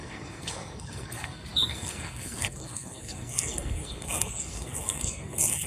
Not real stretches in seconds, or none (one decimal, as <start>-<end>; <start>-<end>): 0.0-5.7

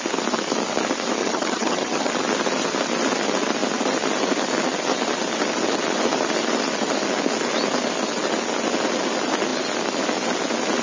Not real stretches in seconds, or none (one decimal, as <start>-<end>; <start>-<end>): 1.2-2.1

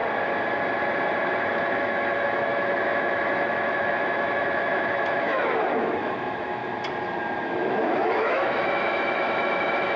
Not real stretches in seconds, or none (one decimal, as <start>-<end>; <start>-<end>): 1.5-6.6; 7.4-10.0

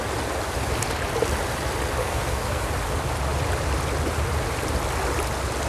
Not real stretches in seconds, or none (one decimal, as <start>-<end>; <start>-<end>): 2.0-2.7

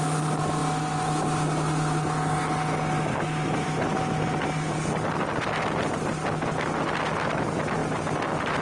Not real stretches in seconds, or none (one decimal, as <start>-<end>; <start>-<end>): none